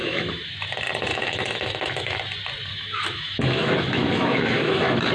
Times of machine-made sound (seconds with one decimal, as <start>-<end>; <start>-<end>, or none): 0.0-0.5; 1.1-2.2; 2.7-5.1